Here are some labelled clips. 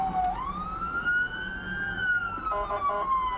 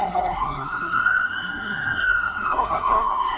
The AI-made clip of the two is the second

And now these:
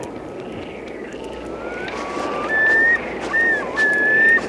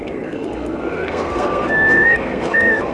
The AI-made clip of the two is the second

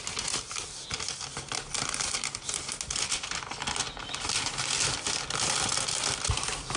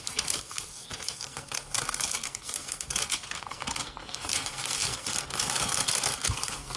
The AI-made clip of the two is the second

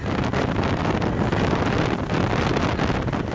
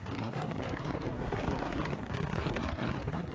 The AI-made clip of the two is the second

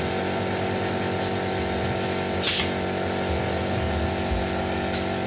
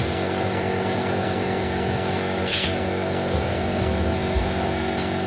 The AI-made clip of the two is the second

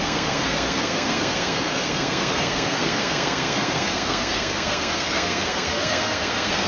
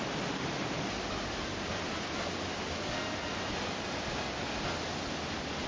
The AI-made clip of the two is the first